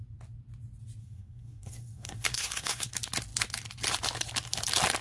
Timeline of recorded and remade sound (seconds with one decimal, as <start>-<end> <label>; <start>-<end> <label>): 0.0-1.0 recorded; 1.0-2.9 remade; 2.9-5.0 recorded